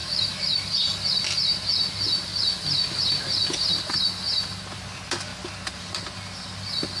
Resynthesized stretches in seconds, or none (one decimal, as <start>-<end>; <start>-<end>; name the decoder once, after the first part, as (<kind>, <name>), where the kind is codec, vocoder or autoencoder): 0.0-0.7 (autoencoder, DAC-VAE)